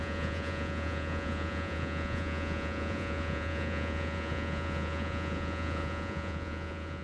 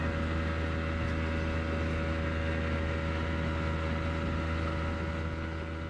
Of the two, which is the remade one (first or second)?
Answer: first